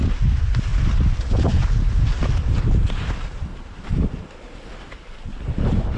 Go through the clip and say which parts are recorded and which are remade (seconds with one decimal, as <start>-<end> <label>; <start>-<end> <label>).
0.0-3.5 recorded; 3.5-4.3 remade; 4.3-6.0 recorded